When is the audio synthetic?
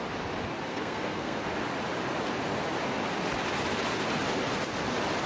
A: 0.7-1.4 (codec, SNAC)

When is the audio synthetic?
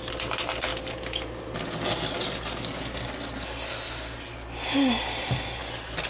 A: none